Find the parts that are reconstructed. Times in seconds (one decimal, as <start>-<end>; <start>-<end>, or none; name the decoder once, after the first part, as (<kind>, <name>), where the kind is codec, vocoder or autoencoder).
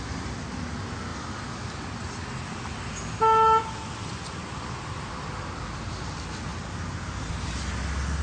none